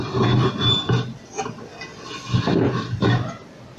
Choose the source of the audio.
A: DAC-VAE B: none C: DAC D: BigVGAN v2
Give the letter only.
B